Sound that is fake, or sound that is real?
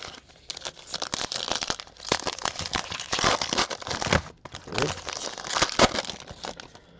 real